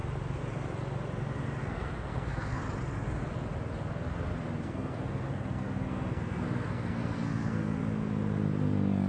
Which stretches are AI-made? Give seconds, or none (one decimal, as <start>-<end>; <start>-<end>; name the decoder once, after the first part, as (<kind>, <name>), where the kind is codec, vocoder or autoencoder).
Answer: 1.6-2.6 (codec, SNAC); 4.6-7.8